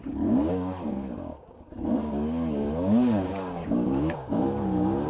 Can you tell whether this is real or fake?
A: fake